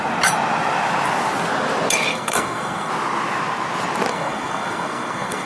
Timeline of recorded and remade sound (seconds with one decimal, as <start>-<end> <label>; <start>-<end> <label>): 0.0-2.1 recorded; 2.1-2.9 remade; 2.9-4.1 recorded; 4.1-5.5 remade